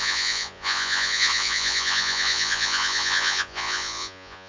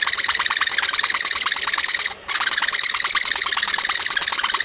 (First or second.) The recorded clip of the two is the second